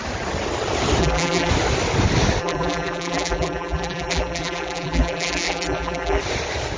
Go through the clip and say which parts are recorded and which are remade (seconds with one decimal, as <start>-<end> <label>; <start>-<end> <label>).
0.0-1.0 recorded; 1.0-1.5 remade; 1.5-2.4 recorded; 2.4-6.2 remade; 6.2-6.8 recorded